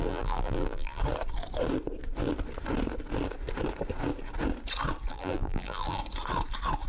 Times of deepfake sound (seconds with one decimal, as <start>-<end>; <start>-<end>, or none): 0.0-1.0; 5.1-6.0